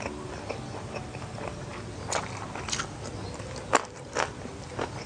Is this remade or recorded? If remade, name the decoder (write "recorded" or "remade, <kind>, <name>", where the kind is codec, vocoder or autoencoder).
recorded